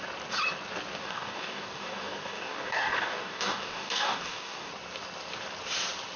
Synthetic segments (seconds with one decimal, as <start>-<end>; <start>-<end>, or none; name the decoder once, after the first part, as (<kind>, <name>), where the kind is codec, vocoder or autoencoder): 1.0-4.7 (codec, DAC)